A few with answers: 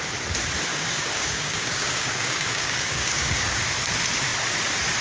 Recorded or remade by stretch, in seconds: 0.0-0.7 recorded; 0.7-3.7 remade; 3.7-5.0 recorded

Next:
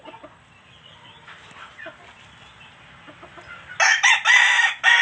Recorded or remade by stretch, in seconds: 0.0-5.0 recorded

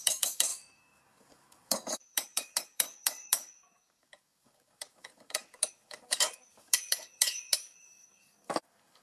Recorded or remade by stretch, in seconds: 0.0-9.0 remade